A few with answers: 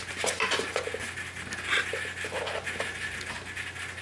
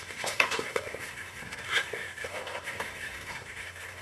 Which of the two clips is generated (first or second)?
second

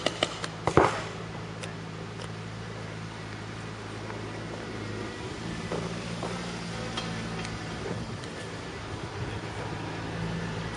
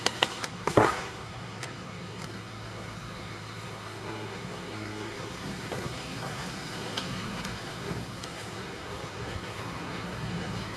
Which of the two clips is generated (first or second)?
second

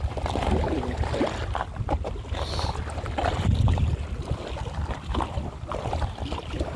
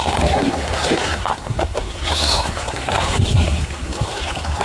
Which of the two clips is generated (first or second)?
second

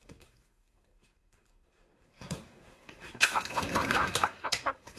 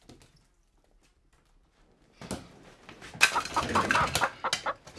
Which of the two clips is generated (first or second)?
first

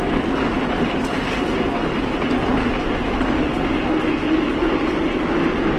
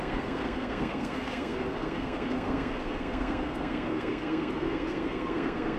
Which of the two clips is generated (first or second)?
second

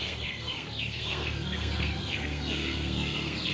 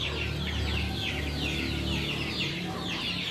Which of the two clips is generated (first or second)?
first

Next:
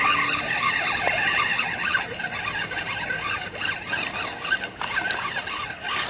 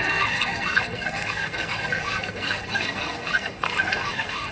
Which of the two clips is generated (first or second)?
second